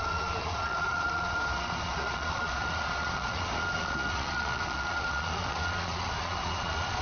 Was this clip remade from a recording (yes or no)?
yes